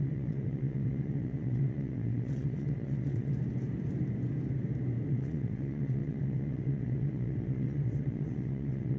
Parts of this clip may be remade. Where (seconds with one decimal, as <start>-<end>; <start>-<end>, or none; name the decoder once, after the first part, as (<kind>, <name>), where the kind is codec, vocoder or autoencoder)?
0.0-3.3 (vocoder, WaveNeXt); 5.1-9.0